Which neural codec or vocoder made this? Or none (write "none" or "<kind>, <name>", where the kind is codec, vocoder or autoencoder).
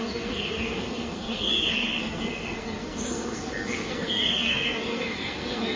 codec, SNAC